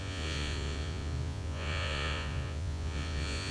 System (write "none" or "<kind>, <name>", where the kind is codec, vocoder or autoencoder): vocoder, Vocos